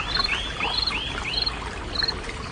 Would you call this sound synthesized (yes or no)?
no